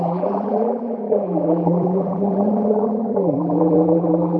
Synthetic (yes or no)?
yes